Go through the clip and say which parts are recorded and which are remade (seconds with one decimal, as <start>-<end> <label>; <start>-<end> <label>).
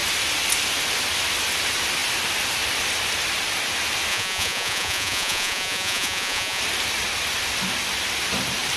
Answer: 0.0-4.1 recorded; 4.1-6.6 remade; 6.6-8.8 recorded